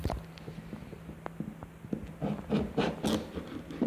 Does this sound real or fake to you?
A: real